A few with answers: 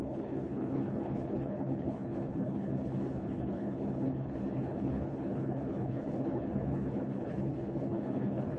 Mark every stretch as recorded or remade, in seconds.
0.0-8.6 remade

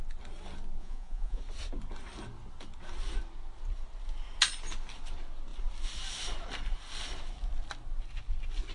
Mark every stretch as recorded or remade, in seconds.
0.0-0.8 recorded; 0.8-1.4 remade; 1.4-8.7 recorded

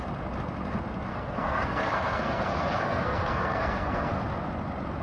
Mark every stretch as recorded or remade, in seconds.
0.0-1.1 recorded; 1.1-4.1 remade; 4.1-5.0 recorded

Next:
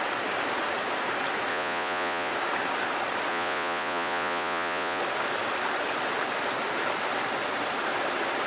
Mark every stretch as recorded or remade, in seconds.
0.0-1.5 recorded; 1.5-2.3 remade; 2.3-3.3 recorded; 3.3-5.0 remade; 5.0-8.5 recorded

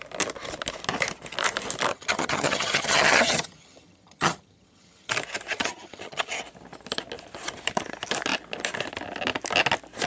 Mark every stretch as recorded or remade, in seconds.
0.0-1.9 recorded; 1.9-5.1 remade; 5.1-5.5 recorded; 5.5-6.4 remade; 6.4-10.1 recorded

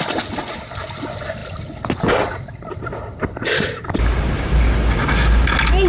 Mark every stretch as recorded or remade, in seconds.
0.0-5.9 recorded

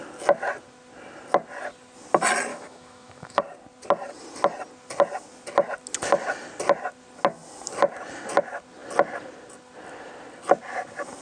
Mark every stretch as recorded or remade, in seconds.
0.0-2.5 recorded; 2.5-3.4 remade; 3.4-11.2 recorded